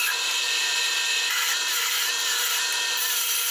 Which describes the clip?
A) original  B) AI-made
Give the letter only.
B